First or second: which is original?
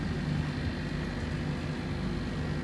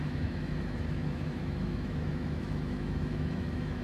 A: first